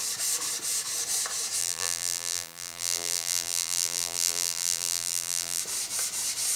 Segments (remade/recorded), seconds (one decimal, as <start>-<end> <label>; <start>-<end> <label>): 0.0-1.6 recorded; 1.6-5.6 remade; 5.6-6.6 recorded

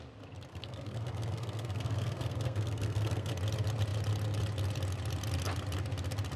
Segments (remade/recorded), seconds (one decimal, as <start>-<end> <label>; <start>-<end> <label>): 0.0-0.5 recorded; 0.5-3.3 remade; 3.3-6.4 recorded

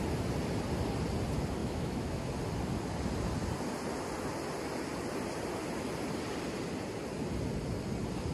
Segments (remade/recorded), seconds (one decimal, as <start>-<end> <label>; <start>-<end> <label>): 0.0-1.6 recorded; 1.6-2.2 remade; 2.2-8.3 recorded

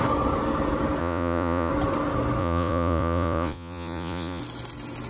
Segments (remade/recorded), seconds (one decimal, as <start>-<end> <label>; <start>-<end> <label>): 0.0-1.0 recorded; 1.0-1.7 remade; 1.7-2.4 recorded; 2.4-4.4 remade; 4.4-5.1 recorded